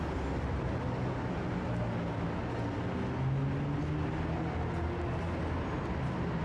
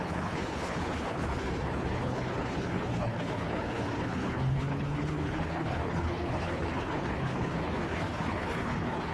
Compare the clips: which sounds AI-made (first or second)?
second